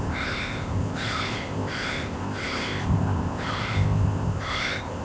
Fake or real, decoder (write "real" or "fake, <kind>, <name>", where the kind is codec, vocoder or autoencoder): fake, codec, ZipCodec